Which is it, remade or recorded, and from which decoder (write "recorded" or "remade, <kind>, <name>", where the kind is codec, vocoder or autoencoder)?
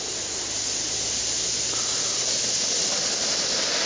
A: recorded